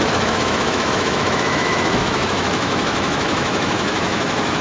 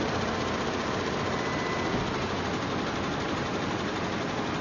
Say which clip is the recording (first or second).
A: second